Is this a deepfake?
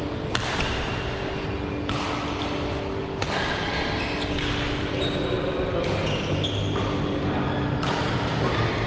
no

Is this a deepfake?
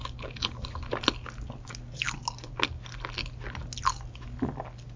no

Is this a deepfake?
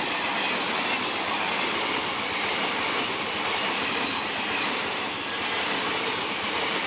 no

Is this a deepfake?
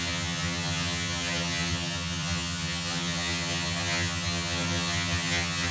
yes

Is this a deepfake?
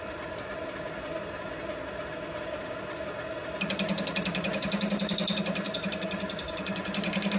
no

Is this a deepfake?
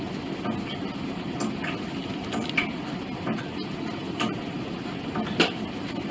no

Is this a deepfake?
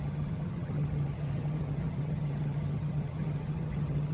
yes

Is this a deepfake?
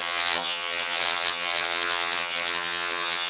yes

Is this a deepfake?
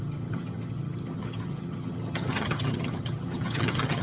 yes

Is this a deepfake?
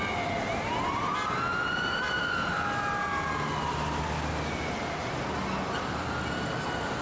no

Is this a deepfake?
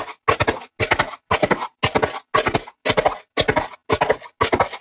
no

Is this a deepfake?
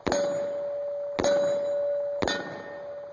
no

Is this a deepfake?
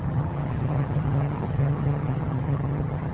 yes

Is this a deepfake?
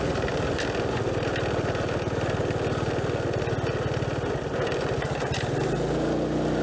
no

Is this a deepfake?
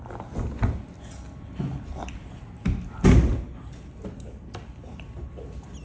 no